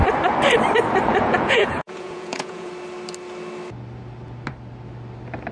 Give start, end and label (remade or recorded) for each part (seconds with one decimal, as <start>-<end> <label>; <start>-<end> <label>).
0.0-1.1 recorded; 1.1-2.7 remade; 2.7-5.5 recorded